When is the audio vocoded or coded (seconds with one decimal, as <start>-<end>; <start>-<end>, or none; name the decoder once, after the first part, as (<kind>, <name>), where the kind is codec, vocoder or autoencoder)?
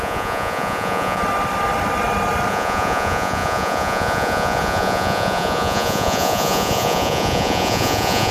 0.0-1.2 (vocoder, Vocos); 2.5-8.3